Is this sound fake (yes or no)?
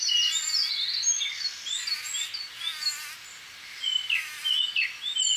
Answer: no